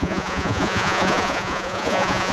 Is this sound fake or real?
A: fake